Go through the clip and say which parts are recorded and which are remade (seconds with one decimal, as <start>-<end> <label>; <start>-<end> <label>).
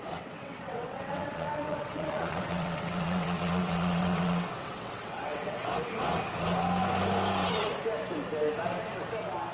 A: 0.0-5.7 remade; 5.7-9.5 recorded